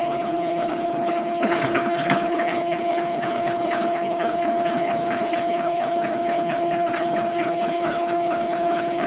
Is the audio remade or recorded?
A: remade